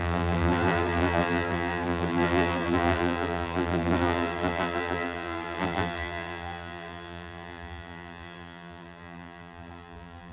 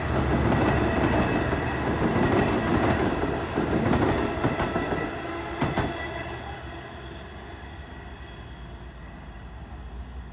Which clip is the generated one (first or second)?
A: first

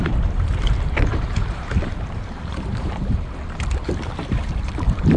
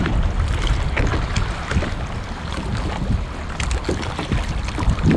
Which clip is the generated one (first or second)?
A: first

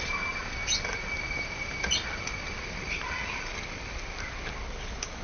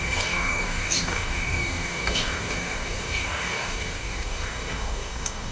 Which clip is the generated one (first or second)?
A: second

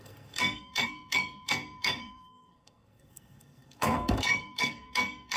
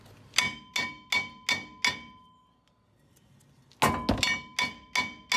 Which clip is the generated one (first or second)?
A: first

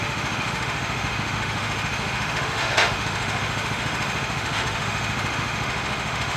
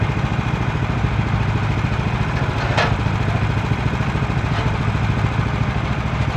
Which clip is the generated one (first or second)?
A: first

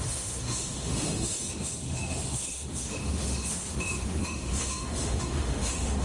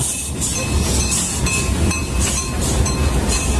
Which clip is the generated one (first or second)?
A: first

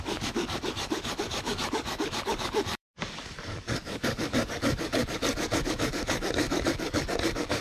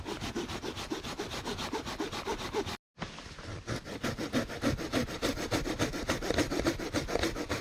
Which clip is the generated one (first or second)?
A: first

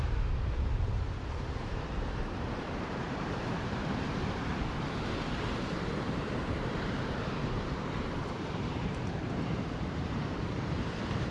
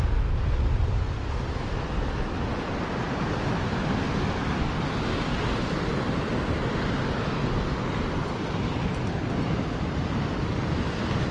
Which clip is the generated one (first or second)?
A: first